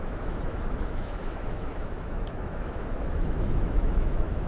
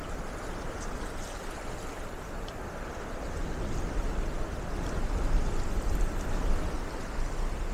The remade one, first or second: first